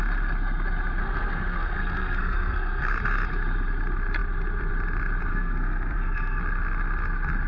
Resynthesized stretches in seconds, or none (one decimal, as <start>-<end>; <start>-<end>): 1.0-2.9; 5.3-6.4